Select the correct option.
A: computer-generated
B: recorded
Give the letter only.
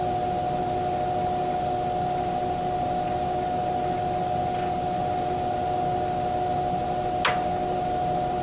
B